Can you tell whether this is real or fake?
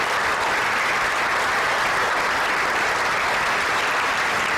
real